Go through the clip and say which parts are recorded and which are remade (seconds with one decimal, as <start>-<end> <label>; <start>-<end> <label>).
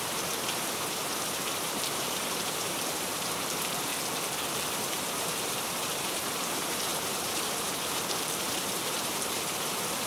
0.0-3.9 remade; 3.9-4.7 recorded; 4.7-10.1 remade